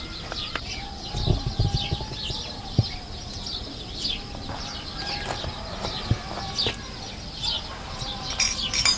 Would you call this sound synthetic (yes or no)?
no